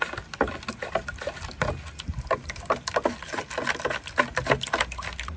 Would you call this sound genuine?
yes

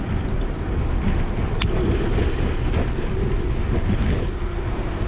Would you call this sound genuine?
yes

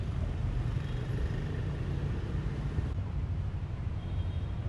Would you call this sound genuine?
no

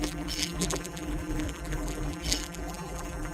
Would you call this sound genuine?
no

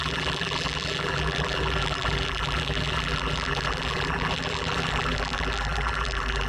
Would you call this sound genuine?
no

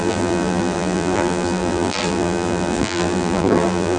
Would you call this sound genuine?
no